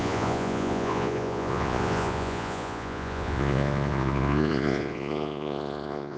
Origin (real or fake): fake